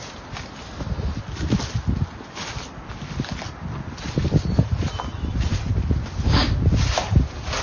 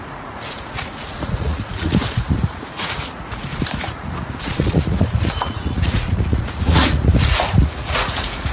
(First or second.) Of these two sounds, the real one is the first